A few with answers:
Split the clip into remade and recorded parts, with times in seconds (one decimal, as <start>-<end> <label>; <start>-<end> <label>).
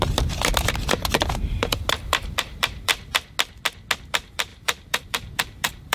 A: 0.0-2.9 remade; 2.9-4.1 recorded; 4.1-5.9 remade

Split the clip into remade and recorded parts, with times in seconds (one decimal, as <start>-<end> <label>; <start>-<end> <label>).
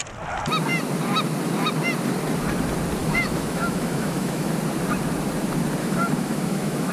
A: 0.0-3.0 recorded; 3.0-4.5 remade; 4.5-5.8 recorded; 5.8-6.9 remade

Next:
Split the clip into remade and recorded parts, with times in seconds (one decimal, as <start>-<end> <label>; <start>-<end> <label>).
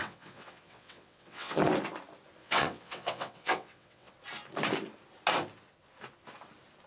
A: 0.0-1.6 remade; 1.6-2.4 recorded; 2.4-4.1 remade; 4.1-6.9 recorded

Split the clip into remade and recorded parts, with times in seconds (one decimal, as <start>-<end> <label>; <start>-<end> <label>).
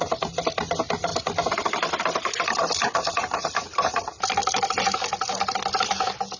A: 0.0-6.4 recorded